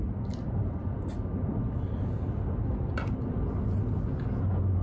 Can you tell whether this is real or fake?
real